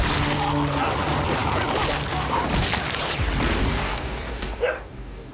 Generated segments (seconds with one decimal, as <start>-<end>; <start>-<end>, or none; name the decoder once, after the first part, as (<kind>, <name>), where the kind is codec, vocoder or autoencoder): 3.6-5.3 (codec, DAC)